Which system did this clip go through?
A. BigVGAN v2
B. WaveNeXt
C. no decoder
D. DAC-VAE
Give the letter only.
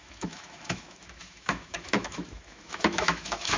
D